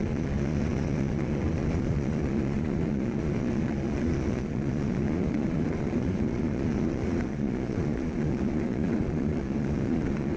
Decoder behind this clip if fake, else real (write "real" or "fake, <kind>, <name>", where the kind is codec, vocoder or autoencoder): fake, vocoder, Vocos